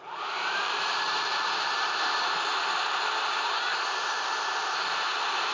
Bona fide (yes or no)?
yes